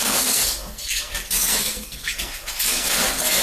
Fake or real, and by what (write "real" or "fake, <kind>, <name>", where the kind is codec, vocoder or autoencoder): fake, codec, SNAC